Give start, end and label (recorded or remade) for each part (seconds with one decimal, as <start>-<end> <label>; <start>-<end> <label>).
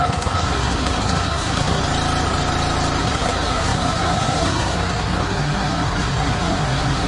0.0-1.8 remade; 1.8-3.0 recorded; 3.0-7.1 remade